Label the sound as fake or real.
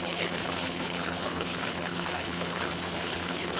fake